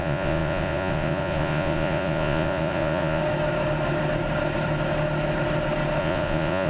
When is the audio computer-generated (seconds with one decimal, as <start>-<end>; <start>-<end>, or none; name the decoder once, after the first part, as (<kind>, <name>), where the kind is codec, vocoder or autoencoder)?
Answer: 0.0-3.2 (vocoder, Vocos); 6.0-6.7